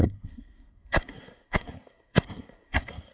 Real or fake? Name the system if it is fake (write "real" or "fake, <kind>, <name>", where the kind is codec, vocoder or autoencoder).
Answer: fake, codec, SNAC